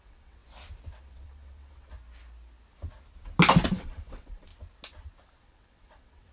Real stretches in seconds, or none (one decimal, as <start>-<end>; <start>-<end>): 0.4-1.0; 1.9-3.7; 4.5-5.4